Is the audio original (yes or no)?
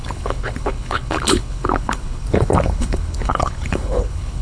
no